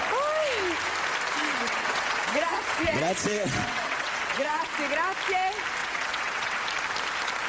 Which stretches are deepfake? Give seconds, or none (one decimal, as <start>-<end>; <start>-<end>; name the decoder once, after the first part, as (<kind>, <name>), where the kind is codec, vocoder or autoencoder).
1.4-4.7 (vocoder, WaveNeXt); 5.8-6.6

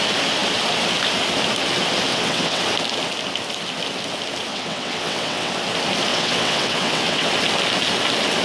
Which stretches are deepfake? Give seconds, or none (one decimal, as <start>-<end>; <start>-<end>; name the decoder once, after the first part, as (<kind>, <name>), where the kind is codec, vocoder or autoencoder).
2.1-2.6 (vocoder, WaveNeXt); 4.5-5.5; 6.1-7.3

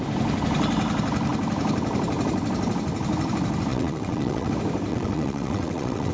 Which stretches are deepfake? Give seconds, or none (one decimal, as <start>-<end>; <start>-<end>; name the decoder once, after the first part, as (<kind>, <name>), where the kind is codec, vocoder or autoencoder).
3.7-4.5 (vocoder, WaveNeXt); 4.9-6.1